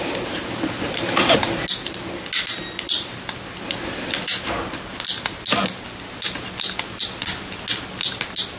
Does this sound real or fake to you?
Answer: real